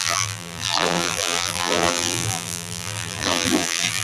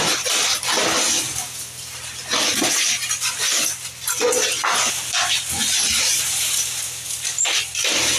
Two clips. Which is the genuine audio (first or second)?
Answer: second